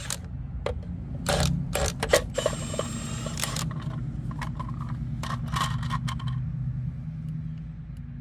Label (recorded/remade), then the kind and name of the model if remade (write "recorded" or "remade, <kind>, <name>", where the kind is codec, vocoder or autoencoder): recorded